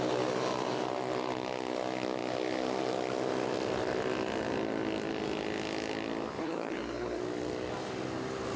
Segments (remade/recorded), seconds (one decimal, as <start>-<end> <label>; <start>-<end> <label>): 0.0-6.4 recorded; 6.4-7.2 remade; 7.2-8.6 recorded